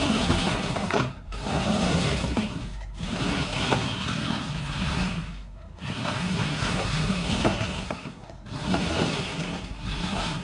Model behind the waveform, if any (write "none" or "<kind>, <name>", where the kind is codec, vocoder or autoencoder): codec, SNAC